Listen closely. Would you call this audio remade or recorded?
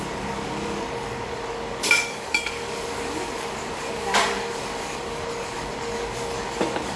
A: remade